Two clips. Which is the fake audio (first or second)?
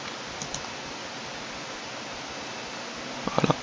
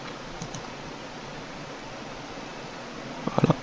second